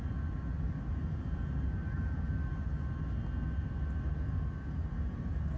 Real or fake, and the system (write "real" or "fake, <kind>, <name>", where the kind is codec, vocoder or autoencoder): real